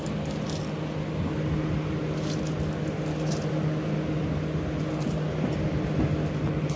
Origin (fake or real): real